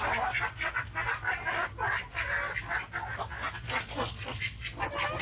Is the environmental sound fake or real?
real